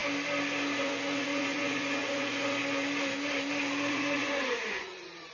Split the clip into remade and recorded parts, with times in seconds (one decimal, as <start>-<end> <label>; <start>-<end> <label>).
0.0-0.8 recorded; 0.8-2.6 remade; 2.6-3.9 recorded; 3.9-5.3 remade